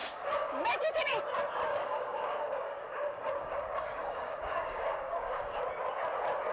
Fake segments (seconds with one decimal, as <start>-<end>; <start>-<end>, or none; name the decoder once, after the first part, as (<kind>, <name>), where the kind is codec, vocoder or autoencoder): 0.0-1.2 (codec, DAC); 1.7-5.6